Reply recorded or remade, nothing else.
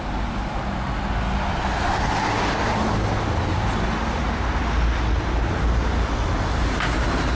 recorded